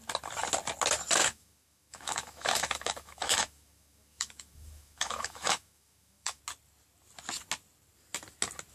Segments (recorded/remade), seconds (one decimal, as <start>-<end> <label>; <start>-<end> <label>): 0.0-1.2 recorded; 1.2-6.4 remade; 6.4-8.7 recorded